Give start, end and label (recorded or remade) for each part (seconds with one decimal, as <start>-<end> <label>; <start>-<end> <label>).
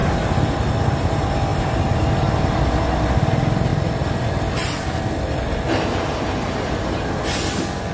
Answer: 0.0-7.9 recorded